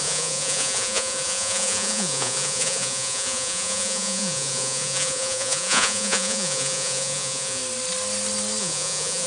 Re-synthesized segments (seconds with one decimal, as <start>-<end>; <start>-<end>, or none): 0.0-7.6; 8.6-9.3